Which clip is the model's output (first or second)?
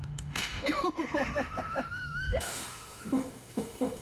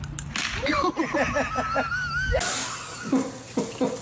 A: first